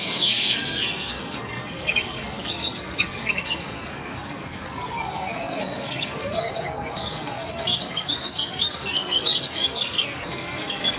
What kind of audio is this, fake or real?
fake